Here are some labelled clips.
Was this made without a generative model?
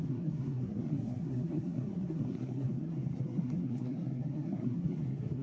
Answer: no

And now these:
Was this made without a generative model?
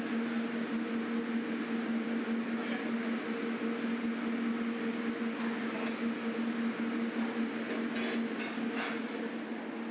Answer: yes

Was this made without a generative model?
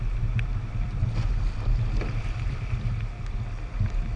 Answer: yes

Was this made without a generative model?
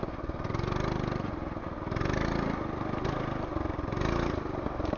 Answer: yes